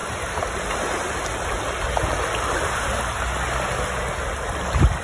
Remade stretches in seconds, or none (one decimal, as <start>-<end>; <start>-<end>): none